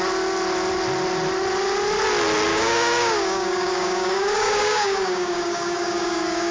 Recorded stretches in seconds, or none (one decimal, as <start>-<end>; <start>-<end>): 0.0-2.5